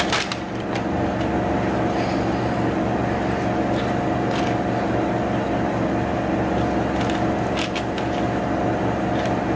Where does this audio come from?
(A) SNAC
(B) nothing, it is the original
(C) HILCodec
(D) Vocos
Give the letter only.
B